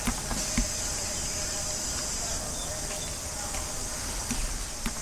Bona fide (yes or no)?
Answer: yes